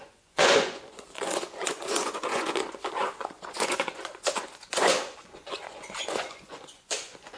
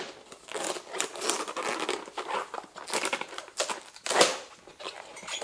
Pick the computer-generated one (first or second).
first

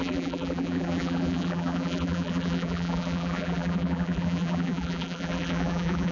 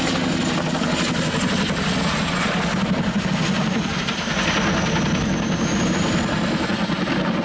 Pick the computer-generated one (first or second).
first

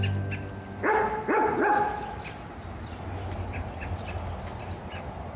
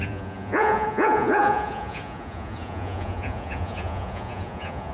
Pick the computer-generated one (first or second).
second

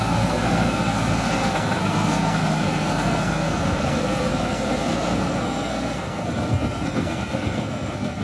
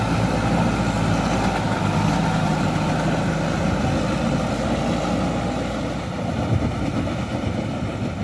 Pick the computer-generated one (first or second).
first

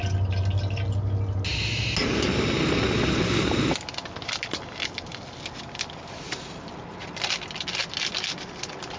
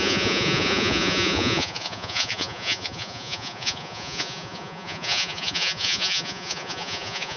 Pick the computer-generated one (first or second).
second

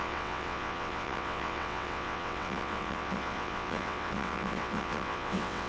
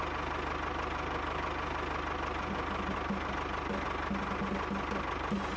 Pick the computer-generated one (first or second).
first